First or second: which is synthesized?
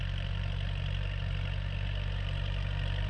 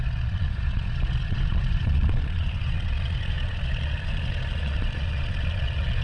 second